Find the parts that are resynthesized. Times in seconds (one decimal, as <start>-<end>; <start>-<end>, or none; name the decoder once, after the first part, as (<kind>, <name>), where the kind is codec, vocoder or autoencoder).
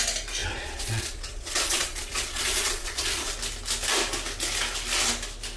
0.4-3.3 (vocoder, Vocos)